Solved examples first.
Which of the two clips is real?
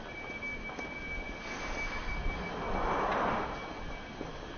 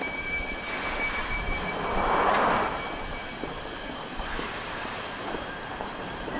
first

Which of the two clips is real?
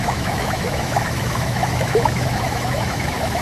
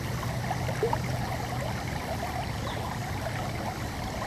second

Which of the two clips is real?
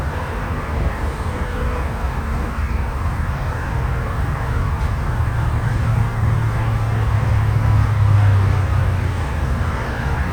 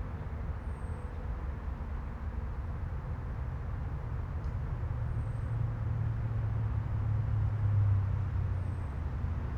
second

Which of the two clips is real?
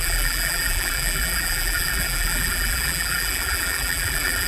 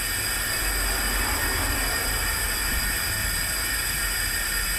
second